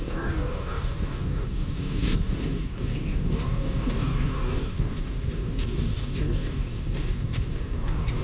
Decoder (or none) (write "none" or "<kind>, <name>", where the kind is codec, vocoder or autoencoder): codec, DAC